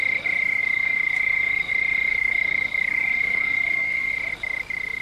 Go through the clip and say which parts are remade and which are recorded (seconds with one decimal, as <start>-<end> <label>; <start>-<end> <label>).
0.0-0.6 recorded; 0.6-1.7 remade; 1.7-2.1 recorded; 2.1-4.1 remade; 4.1-5.0 recorded